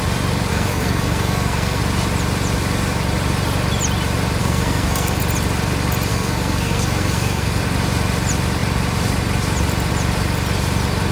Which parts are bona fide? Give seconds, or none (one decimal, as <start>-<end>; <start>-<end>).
0.0-0.5; 1.8-4.4; 5.2-6.1; 7.6-11.1